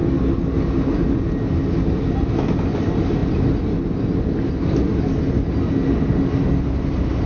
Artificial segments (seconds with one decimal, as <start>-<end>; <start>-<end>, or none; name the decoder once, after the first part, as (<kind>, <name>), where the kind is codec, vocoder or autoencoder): none